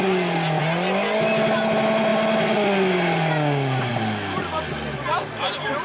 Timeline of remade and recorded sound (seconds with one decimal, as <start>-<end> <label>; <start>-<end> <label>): 0.0-5.8 recorded